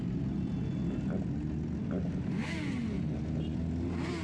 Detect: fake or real real